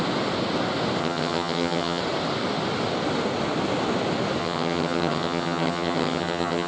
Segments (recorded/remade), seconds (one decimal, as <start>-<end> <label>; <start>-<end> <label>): 0.0-1.0 recorded; 1.0-2.0 remade; 2.0-4.4 recorded; 4.4-6.7 remade